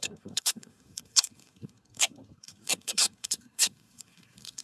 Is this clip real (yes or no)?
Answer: no